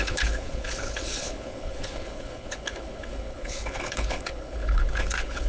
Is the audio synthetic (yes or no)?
yes